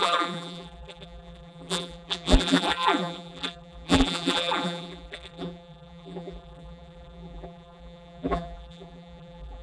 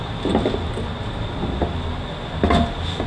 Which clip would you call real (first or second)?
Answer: second